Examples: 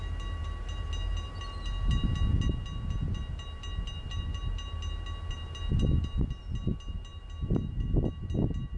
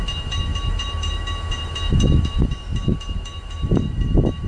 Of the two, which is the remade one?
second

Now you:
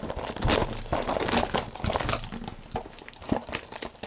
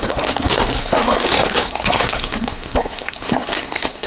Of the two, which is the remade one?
second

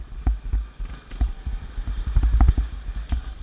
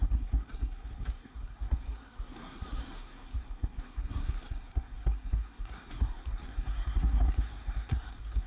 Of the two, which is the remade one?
second